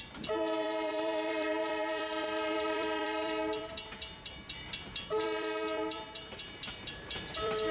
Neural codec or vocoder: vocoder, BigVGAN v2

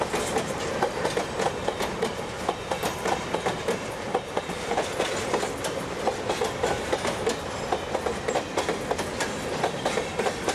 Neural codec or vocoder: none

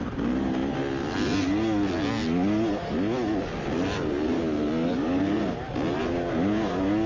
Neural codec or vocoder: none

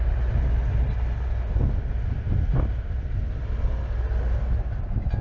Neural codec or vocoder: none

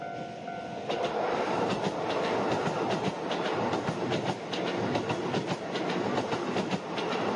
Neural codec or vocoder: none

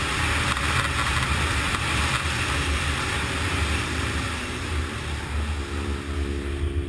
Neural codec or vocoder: none